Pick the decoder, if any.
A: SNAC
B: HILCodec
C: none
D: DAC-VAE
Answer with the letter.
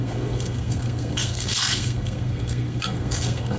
A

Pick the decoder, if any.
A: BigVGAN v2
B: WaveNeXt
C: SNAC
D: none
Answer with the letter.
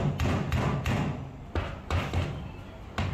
D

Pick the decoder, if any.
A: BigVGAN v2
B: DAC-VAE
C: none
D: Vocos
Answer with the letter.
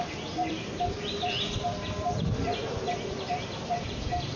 A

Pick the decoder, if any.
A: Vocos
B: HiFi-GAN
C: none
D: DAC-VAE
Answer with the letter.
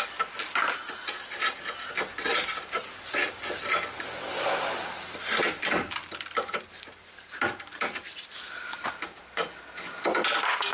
C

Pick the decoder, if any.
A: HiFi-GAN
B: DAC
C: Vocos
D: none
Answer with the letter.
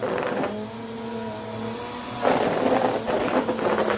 D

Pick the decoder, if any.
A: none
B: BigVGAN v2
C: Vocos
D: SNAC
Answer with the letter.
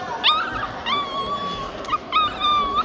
A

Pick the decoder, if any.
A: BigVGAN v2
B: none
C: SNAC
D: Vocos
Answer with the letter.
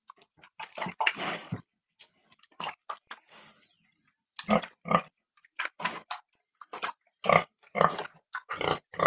A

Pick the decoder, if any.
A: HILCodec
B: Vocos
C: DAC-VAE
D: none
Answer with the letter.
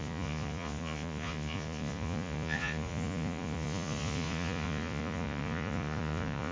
B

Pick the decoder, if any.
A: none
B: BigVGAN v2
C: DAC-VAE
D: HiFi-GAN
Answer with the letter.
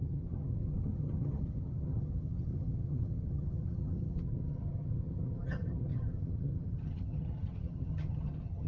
D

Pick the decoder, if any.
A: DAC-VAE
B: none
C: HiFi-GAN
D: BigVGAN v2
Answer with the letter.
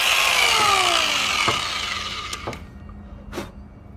B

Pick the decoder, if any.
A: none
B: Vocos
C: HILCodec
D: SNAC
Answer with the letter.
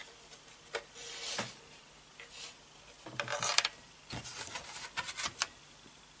A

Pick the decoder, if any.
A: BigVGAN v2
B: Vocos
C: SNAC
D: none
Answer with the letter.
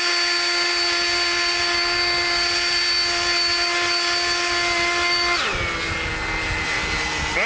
D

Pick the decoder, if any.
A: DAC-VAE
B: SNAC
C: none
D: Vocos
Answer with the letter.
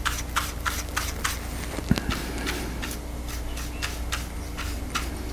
C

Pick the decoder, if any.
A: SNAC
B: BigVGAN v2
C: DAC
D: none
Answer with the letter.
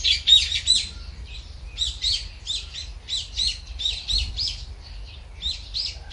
B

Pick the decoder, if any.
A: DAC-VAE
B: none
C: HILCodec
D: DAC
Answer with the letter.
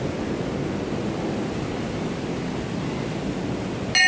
B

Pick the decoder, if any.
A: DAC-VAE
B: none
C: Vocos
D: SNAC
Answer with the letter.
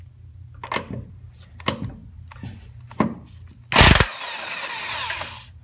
B